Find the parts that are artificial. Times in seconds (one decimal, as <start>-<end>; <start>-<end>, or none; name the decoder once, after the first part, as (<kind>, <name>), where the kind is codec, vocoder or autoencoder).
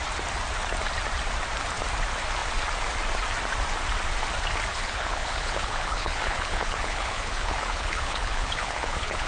4.7-9.3 (codec, HILCodec)